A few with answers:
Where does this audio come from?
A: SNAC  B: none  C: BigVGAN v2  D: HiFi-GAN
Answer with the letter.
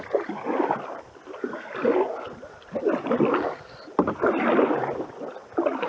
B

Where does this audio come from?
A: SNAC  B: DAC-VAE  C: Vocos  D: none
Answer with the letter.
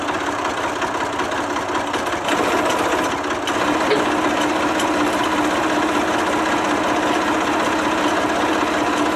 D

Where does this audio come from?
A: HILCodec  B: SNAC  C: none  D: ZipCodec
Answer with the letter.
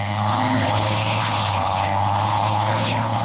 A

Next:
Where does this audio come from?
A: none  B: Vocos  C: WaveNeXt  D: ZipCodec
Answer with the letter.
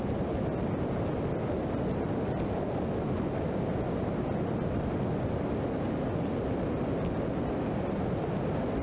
A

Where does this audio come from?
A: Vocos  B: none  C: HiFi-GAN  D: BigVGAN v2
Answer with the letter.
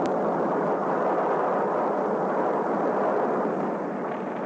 B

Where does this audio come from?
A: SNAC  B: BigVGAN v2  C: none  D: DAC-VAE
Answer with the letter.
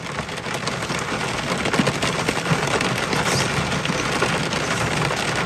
C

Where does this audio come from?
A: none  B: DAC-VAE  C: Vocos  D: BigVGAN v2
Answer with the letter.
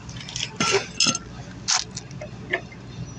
A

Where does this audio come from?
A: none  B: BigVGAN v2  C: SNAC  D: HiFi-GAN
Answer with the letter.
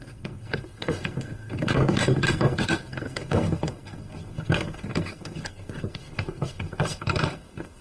C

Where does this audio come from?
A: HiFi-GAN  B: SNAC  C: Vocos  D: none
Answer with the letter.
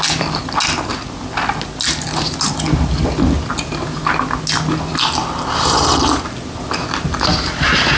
D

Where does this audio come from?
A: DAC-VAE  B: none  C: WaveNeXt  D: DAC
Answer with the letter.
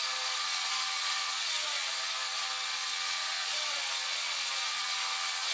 C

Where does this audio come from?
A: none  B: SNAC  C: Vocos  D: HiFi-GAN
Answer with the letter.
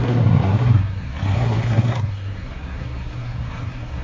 B